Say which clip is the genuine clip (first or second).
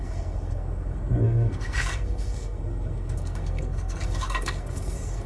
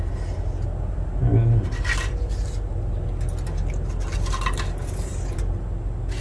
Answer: second